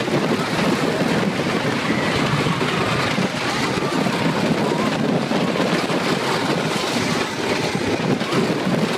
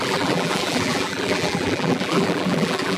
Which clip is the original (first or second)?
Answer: first